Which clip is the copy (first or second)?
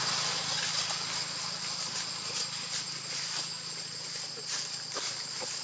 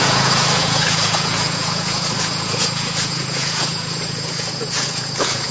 second